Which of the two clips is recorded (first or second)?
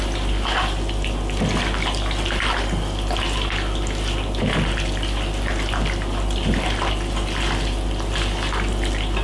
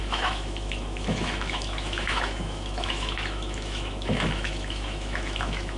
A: first